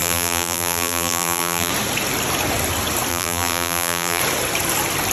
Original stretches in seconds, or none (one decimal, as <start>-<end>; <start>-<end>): 1.7-3.1; 4.2-5.1